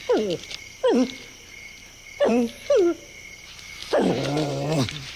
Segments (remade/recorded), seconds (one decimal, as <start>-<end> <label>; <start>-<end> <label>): 0.0-5.2 recorded